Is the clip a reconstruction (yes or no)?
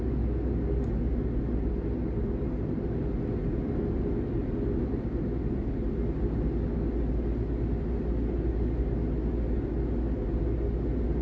no